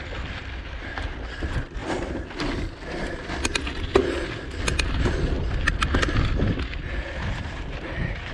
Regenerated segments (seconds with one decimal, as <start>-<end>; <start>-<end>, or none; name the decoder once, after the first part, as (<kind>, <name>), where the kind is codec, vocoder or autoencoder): none